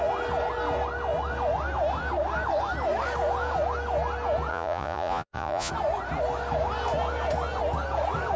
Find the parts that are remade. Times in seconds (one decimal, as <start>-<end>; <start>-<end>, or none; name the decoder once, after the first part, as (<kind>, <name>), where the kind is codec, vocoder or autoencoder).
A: 4.5-5.7 (vocoder, Vocos)